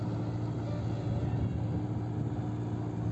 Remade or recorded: recorded